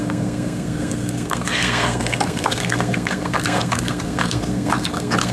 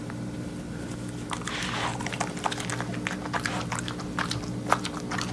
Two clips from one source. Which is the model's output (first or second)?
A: first